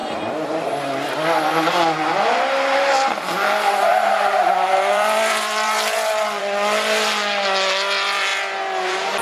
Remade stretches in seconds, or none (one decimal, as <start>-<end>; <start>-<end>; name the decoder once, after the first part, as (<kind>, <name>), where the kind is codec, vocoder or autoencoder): 3.9-6.4 (vocoder, BigVGAN v2)